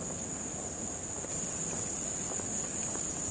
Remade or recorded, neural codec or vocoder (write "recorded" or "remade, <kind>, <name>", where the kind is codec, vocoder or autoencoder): recorded